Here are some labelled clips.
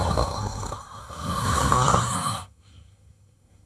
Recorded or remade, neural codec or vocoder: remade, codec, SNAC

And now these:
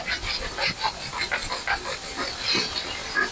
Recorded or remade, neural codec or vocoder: recorded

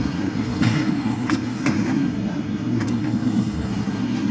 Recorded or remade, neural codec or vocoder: remade, codec, SNAC